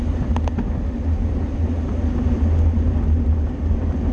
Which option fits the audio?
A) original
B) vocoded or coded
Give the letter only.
A